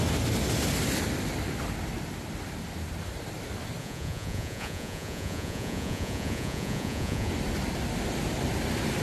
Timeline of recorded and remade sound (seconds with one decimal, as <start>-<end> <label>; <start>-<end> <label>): 0.0-3.8 recorded; 3.8-7.3 remade; 7.3-9.0 recorded